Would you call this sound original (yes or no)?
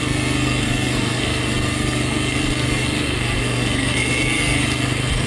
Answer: no